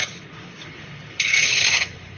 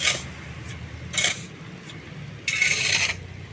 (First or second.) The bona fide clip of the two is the second